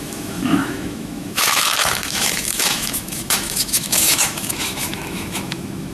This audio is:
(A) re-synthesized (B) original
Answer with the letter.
A